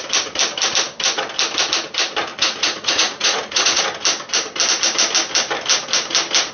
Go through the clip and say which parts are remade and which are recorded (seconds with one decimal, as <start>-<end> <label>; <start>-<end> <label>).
0.0-2.3 recorded; 2.3-3.8 remade; 3.8-6.5 recorded